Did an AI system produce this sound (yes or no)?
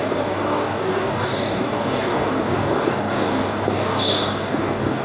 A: yes